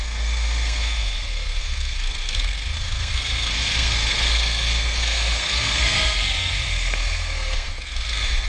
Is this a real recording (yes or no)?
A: no